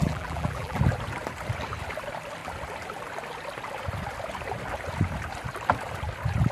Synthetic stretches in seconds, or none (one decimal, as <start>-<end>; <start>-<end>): 0.0-0.8